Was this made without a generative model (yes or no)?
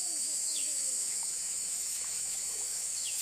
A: no